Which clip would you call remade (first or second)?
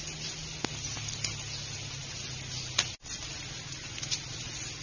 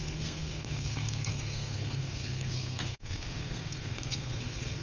second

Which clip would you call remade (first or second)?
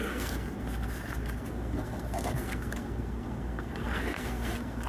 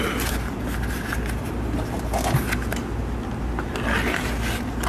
first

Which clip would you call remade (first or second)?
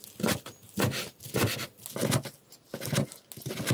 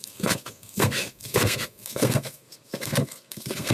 second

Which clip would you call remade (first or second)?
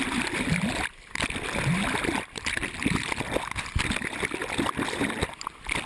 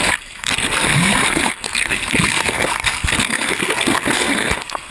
second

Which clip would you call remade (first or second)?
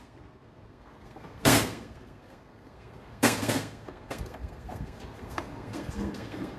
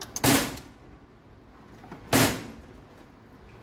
first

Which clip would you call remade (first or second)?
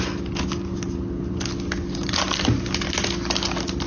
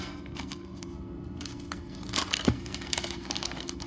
second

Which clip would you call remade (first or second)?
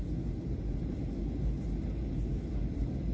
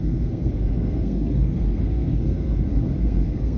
second